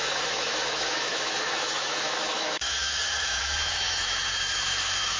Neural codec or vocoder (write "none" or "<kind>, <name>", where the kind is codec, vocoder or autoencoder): autoencoder, DAC-VAE